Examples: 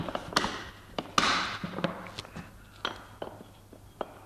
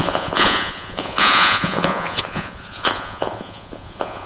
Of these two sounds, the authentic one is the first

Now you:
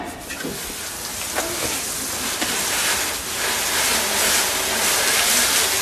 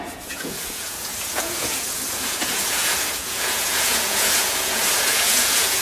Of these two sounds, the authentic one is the first